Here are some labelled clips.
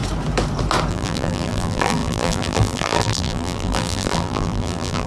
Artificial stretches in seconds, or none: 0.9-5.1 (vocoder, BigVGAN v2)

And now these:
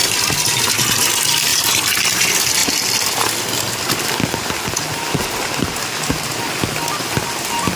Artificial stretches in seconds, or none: 0.0-0.7 (vocoder, BigVGAN v2); 1.5-2.2

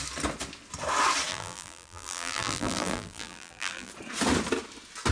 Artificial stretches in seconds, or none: 1.3-3.9 (vocoder, BigVGAN v2)

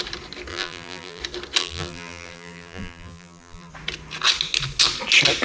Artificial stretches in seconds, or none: 0.5-1.2 (vocoder, BigVGAN v2); 1.6-3.7

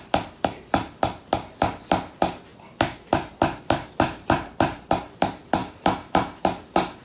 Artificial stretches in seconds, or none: 0.0-2.5 (vocoder, BigVGAN v2); 3.6-7.0

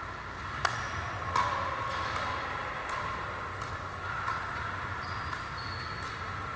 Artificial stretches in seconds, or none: none

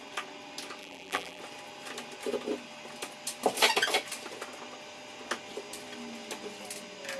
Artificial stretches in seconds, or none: 0.8-1.4 (vocoder, BigVGAN v2)